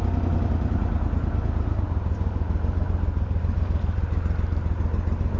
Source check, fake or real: real